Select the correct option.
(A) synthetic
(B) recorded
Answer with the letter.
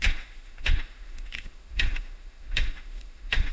A